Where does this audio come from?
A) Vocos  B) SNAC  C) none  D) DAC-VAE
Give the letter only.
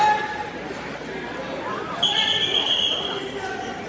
C